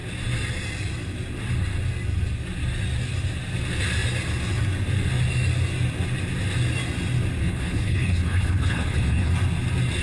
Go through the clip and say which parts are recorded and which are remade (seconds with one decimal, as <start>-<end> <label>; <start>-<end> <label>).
0.0-7.4 recorded; 7.4-9.3 remade; 9.3-10.0 recorded

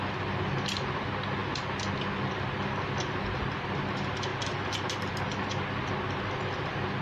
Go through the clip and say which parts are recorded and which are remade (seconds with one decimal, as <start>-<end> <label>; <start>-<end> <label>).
0.0-7.0 recorded

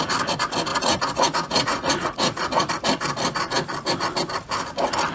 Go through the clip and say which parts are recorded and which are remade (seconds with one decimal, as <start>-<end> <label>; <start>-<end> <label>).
0.0-0.7 recorded; 0.7-2.7 remade; 2.7-5.1 recorded

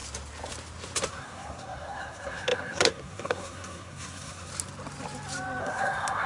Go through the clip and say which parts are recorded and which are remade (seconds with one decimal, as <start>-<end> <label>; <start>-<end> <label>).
0.0-1.1 recorded; 1.1-4.5 remade; 4.5-5.6 recorded; 5.6-6.3 remade

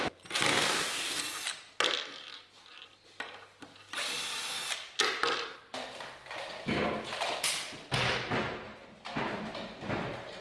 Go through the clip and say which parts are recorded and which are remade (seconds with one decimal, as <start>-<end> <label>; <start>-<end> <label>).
0.0-0.5 recorded; 0.5-1.2 remade; 1.2-10.4 recorded

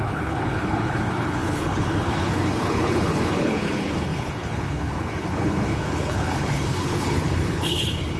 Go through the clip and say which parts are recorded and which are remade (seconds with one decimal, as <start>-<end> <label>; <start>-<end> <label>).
0.0-8.2 remade

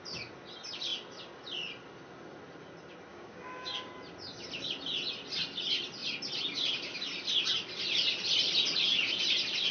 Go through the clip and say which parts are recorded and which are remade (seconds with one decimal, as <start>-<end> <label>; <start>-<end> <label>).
0.0-3.1 recorded; 3.1-3.9 remade; 3.9-9.7 recorded